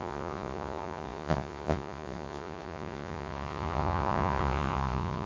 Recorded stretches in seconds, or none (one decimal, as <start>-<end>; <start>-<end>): none